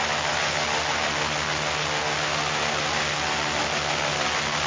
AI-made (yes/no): no